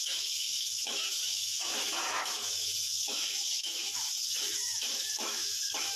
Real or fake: fake